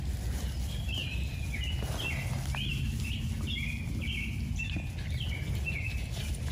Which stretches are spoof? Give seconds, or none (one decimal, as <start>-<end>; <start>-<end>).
none